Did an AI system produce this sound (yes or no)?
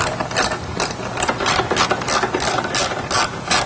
no